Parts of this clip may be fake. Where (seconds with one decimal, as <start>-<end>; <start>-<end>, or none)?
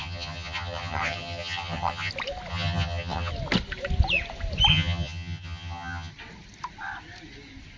0.0-2.1; 2.5-3.3; 4.7-6.1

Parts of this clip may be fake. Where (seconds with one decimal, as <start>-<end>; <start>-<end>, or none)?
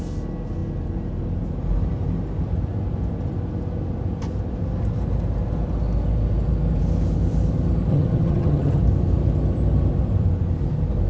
7.9-8.8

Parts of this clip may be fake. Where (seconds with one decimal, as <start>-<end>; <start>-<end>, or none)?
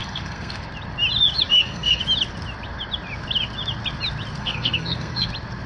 0.0-0.7; 1.5-2.0; 4.4-5.3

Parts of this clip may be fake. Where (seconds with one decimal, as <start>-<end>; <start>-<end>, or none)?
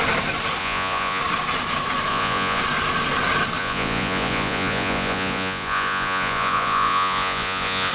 0.6-1.2; 2.1-2.6; 3.6-7.9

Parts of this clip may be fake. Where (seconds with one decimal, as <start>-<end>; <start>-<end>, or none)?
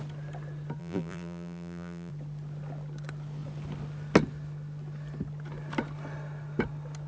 0.8-2.1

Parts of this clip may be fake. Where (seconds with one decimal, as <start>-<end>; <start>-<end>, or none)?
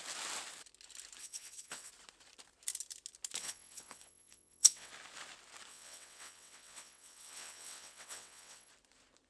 1.2-1.9; 3.4-4.9; 5.7-8.7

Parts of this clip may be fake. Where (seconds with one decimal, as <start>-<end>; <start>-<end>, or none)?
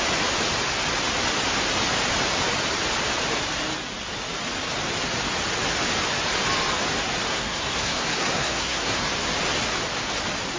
7.3-9.1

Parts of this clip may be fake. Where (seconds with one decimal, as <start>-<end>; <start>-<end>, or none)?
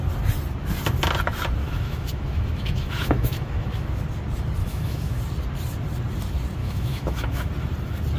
1.6-4.0; 4.6-5.2; 6.6-7.5